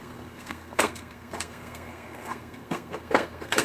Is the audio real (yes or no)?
no